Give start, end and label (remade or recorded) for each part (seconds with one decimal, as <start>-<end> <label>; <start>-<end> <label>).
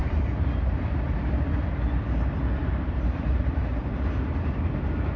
0.0-0.8 remade; 0.8-2.6 recorded; 2.6-3.8 remade; 3.8-5.2 recorded